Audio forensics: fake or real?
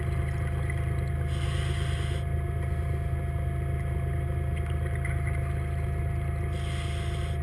real